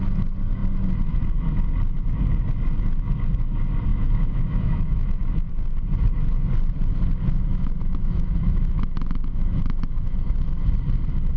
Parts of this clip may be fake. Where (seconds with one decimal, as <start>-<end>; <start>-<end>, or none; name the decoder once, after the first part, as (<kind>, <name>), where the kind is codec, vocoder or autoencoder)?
3.9-5.5 (autoencoder, DAC-VAE); 7.5-10.4